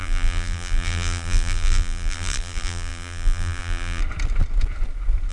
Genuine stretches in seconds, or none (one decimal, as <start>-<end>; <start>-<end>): 4.0-5.3